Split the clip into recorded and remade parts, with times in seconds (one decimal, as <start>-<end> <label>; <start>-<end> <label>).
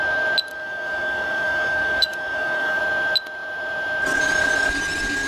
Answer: 0.0-0.5 recorded; 0.5-2.8 remade; 2.8-5.3 recorded